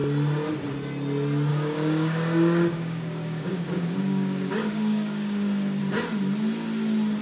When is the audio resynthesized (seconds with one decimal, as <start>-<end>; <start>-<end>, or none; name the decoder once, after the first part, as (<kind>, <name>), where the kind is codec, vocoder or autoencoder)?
1.5-5.8 (codec, DAC)